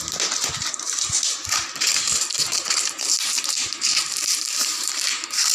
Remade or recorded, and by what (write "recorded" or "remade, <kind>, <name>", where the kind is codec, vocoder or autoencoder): remade, vocoder, BigVGAN v2